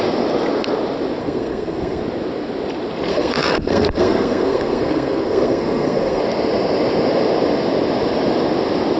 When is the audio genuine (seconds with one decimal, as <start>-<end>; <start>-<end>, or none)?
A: 0.0-1.2; 2.0-3.1; 6.2-9.0